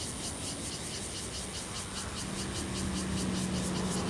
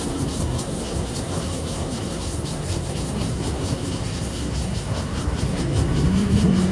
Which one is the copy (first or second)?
second